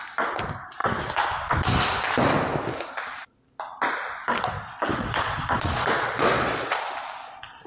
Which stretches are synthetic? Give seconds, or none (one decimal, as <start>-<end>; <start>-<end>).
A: 4.9-6.8